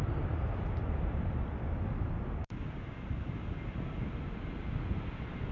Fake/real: real